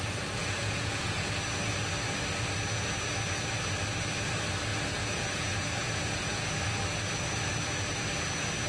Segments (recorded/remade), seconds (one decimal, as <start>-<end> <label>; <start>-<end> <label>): 0.0-0.4 recorded; 0.4-1.3 remade; 1.3-4.7 recorded; 4.7-6.5 remade; 6.5-8.7 recorded